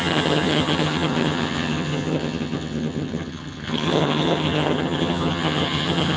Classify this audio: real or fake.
fake